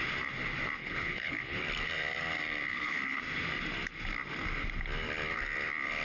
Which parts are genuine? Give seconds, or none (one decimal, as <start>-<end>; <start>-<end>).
0.0-0.8; 1.6-2.7; 3.2-6.0